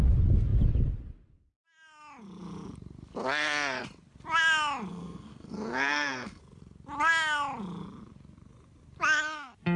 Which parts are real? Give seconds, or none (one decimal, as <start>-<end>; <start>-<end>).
0.0-4.9; 6.4-9.8